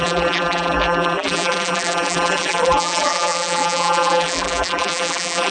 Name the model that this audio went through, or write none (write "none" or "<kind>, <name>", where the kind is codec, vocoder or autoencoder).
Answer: vocoder, BigVGAN v2